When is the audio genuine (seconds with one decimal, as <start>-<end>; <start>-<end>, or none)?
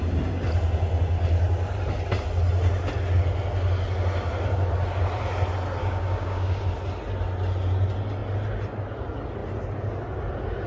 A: 0.0-5.8; 6.6-10.7